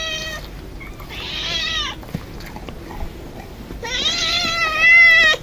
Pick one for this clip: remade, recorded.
recorded